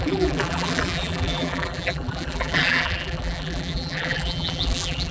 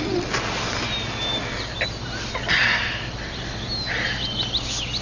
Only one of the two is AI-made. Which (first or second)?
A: first